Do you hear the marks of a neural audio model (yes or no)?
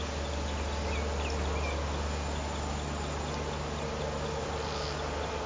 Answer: no